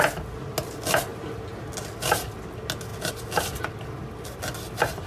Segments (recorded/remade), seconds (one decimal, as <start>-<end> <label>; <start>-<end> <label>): 0.0-1.1 recorded; 1.1-1.6 remade; 1.6-5.1 recorded